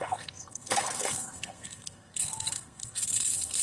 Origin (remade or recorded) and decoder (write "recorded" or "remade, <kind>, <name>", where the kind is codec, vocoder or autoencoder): remade, codec, SNAC